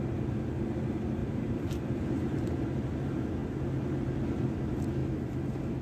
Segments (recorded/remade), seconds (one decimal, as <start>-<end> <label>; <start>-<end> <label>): 0.0-1.2 recorded; 1.2-2.4 remade; 2.4-5.8 recorded